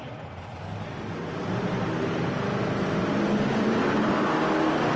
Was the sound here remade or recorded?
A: recorded